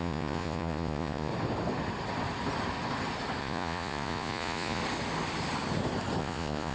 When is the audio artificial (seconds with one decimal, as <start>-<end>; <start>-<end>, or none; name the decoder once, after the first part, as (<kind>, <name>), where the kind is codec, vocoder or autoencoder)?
0.0-1.3 (vocoder, Vocos); 3.4-4.8; 6.2-6.7